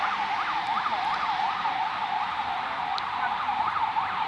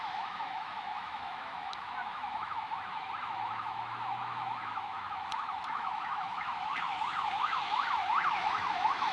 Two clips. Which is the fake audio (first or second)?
second